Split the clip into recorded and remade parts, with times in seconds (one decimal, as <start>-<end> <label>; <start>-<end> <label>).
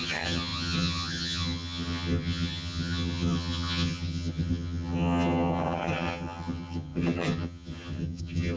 0.0-8.6 remade